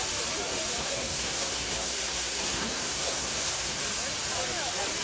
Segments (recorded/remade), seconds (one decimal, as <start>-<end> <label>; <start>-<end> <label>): 0.0-0.8 recorded; 0.8-3.8 remade; 3.8-5.0 recorded